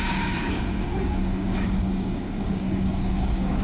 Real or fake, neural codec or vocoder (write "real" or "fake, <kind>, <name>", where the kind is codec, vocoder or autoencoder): fake, codec, DAC